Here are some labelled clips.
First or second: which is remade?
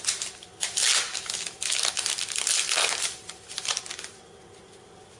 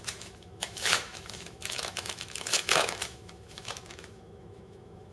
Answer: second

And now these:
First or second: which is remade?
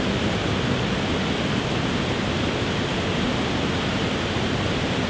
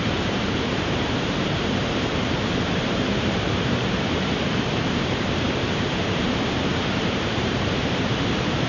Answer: second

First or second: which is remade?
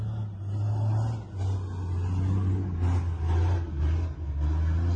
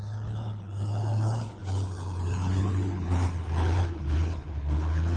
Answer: second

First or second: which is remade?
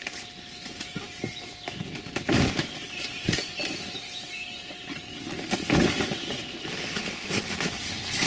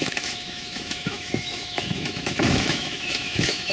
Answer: second